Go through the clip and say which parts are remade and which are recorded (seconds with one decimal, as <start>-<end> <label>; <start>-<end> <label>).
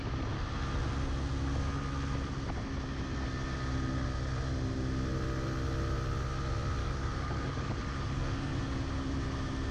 0.0-6.8 recorded; 6.8-8.5 remade; 8.5-9.7 recorded